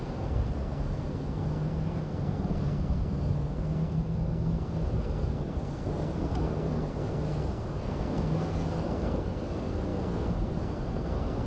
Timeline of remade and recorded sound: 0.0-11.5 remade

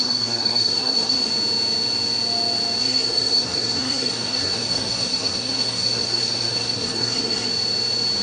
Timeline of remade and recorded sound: 0.0-1.3 remade; 1.3-2.8 recorded; 2.8-7.5 remade; 7.5-8.2 recorded